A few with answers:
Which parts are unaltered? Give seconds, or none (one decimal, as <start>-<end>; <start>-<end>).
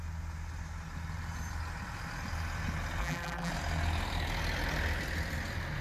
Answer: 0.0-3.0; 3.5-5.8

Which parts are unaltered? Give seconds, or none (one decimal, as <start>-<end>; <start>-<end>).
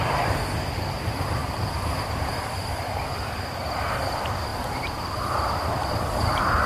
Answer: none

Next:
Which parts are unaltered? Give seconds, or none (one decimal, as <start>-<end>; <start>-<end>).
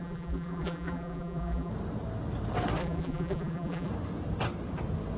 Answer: 1.7-2.8; 3.9-5.2